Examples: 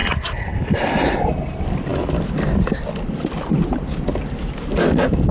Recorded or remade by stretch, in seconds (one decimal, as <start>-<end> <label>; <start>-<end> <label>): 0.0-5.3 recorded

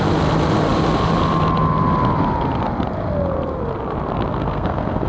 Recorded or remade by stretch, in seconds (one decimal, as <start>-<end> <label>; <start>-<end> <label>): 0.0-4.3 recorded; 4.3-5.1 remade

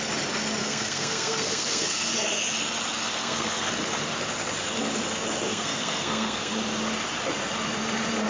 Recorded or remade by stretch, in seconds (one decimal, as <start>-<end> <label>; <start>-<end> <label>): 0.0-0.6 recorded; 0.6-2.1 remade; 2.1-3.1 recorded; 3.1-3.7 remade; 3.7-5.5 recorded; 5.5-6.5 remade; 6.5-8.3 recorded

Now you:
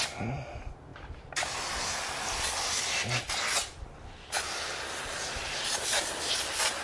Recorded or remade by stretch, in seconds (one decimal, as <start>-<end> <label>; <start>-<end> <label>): 0.0-6.8 recorded

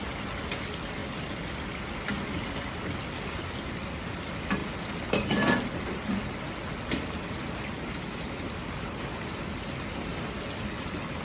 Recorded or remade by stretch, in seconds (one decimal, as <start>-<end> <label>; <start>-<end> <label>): 0.0-11.2 recorded

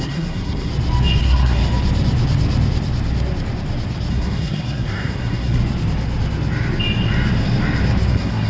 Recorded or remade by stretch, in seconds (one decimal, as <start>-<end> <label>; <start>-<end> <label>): 0.0-0.7 remade; 0.7-1.2 recorded; 1.2-1.6 remade; 1.6-4.1 recorded; 4.1-5.6 remade; 5.6-8.1 recorded; 8.1-8.5 remade